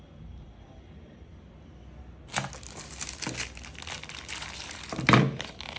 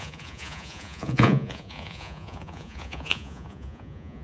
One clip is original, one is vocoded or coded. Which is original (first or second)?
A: first